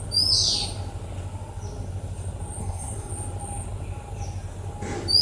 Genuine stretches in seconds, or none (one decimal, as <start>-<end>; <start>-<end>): 0.0-2.6; 3.1-5.2